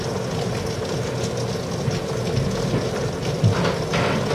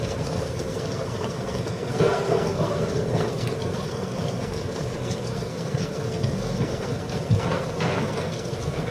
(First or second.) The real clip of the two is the first